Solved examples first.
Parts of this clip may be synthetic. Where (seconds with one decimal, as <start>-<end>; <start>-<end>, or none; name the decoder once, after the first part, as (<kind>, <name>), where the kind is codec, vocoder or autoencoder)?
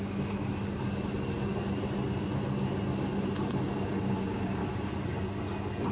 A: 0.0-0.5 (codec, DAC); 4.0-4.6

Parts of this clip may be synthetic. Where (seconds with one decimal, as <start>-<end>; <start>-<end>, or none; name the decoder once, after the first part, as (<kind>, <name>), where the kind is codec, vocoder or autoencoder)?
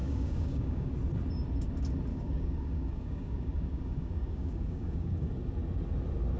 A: 0.0-0.9 (codec, DAC); 2.1-5.3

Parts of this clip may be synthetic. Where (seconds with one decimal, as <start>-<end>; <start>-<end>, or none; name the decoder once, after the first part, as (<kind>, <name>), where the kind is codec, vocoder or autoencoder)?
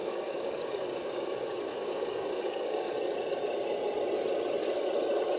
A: 0.0-2.9 (codec, DAC)